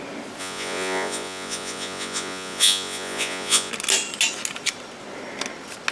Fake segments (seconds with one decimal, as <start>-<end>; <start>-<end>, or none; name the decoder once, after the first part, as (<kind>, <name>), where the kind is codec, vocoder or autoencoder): 0.4-3.7 (vocoder, Vocos)